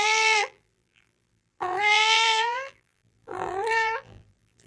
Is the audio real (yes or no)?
no